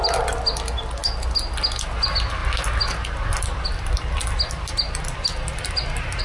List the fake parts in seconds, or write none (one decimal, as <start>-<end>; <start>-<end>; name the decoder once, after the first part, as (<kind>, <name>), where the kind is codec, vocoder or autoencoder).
none